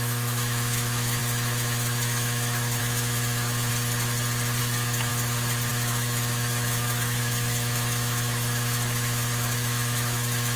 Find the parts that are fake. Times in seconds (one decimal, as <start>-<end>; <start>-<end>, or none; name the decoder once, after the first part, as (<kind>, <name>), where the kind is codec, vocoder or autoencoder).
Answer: 0.0-3.7 (autoencoder, DAC-VAE); 4.6-5.1; 5.7-10.6